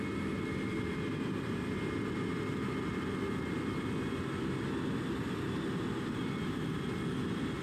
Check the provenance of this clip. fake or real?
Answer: fake